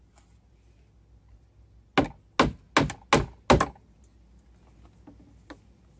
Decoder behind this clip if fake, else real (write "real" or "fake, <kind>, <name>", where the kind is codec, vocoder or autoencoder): real